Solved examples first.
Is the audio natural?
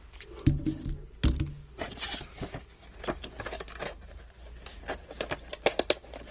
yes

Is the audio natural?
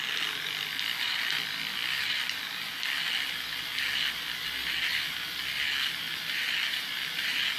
yes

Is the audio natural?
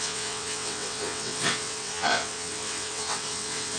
no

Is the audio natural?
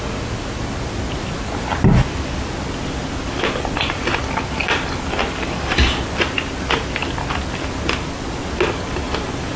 yes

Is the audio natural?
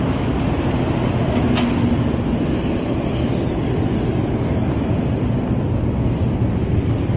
yes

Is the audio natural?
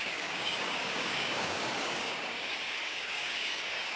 no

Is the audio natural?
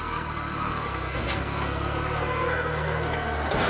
no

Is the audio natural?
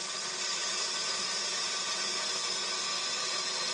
yes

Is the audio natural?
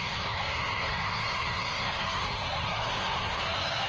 no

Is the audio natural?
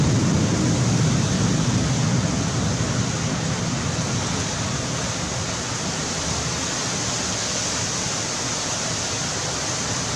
yes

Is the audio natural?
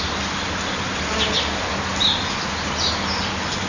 yes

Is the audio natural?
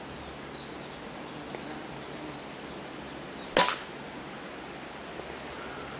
yes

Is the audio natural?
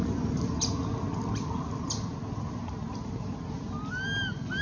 yes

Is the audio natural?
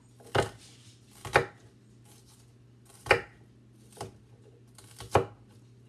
yes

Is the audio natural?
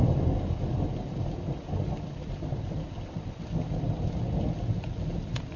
yes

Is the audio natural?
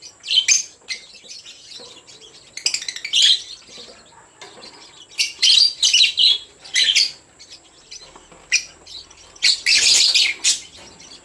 yes